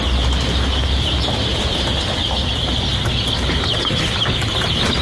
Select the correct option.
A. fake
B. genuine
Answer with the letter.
B